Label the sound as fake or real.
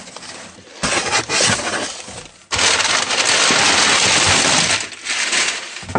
real